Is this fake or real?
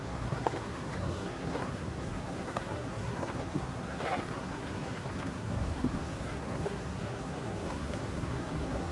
fake